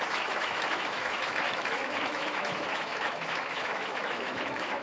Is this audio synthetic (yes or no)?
yes